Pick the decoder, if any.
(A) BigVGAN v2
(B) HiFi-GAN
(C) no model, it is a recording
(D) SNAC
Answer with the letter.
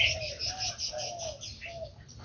C